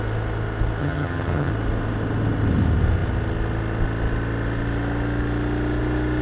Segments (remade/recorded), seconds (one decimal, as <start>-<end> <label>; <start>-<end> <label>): 0.0-0.8 recorded; 0.8-1.5 remade; 1.5-6.2 recorded